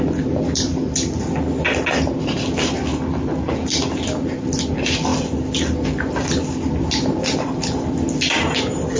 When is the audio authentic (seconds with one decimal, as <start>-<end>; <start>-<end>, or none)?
0.0-2.9; 3.5-9.0